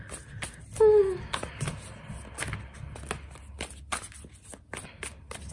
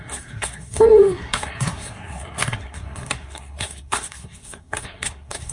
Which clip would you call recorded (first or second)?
first